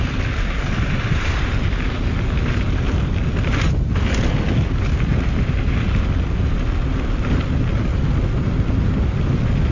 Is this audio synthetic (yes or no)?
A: no